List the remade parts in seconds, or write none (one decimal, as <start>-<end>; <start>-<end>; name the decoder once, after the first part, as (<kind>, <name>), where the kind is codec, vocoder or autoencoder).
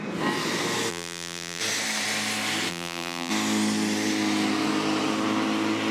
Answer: 0.9-1.6 (vocoder, BigVGAN v2); 2.7-3.3